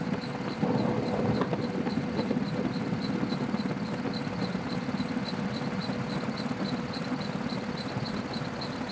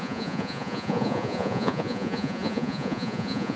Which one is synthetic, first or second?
second